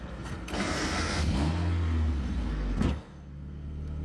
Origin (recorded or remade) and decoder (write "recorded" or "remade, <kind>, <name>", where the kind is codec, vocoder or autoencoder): remade, codec, SNAC